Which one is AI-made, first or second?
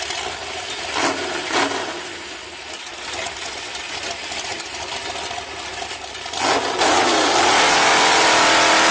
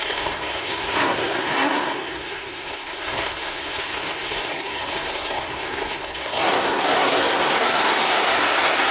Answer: second